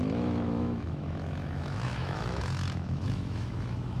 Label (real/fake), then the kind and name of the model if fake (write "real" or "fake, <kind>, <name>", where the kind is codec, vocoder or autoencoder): fake, autoencoder, DAC-VAE